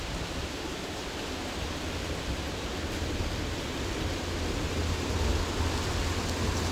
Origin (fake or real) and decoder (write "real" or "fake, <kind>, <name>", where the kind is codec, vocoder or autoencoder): real